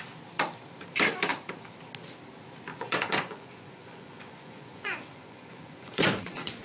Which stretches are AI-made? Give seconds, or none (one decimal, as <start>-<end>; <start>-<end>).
2.7-6.6